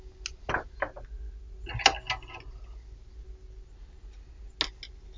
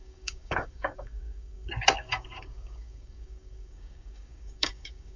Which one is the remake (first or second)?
second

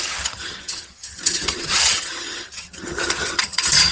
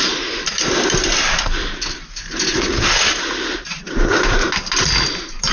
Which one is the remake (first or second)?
first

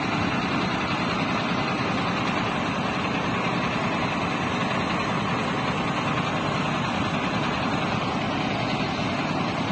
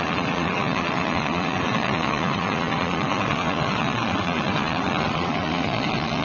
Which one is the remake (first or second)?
second